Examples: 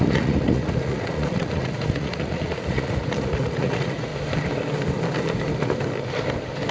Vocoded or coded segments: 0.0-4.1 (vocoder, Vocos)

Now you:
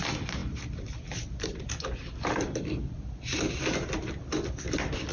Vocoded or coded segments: none

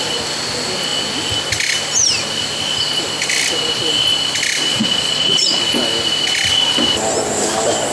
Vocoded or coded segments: 4.7-5.6 (vocoder, Vocos)

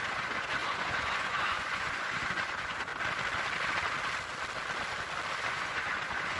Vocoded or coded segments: 0.0-2.9 (vocoder, Vocos); 5.5-6.4

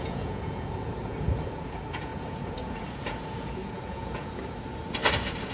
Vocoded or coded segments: 0.0-4.4 (vocoder, Vocos); 5.1-5.5

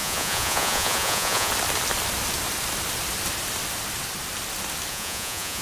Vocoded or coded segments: 0.0-1.5 (vocoder, Vocos); 4.9-5.6